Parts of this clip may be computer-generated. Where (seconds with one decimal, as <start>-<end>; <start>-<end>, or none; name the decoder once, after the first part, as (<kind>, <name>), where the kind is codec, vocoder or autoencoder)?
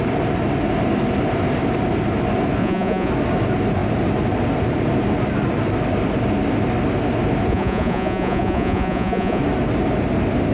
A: 2.6-3.1 (vocoder, Vocos); 7.5-9.4